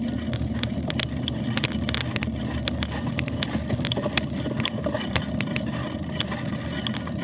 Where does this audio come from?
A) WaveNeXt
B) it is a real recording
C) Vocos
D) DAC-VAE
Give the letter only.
B